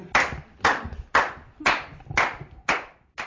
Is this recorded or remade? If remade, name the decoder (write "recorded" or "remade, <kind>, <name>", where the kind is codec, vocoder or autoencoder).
recorded